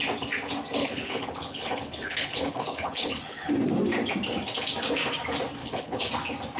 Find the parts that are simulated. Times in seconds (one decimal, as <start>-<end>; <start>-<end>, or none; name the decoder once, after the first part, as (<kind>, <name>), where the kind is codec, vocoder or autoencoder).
0.8-3.5 (codec, HILCodec); 5.6-6.1